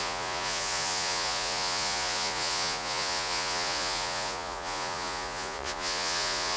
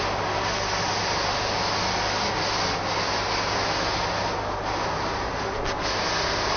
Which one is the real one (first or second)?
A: second